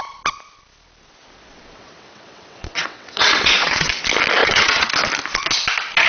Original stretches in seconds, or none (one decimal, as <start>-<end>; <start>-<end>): 0.0-1.5; 3.9-4.4; 4.9-6.1